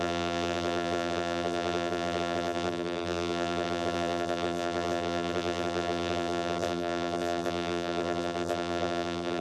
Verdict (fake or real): fake